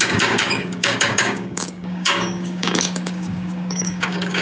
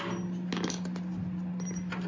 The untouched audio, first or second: second